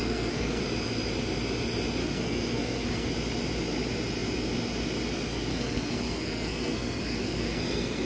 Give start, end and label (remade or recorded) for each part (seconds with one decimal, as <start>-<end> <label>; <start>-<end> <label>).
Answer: 0.0-0.6 remade; 0.6-2.0 recorded; 2.0-3.1 remade; 3.1-5.5 recorded; 5.5-8.1 remade